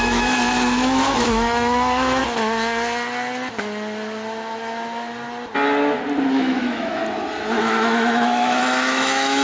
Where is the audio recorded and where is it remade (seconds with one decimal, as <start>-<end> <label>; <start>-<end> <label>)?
0.0-2.2 remade; 2.2-6.3 recorded; 6.3-7.0 remade; 7.0-7.6 recorded; 7.6-9.4 remade